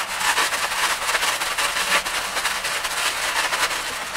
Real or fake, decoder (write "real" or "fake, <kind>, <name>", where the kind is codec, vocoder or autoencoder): real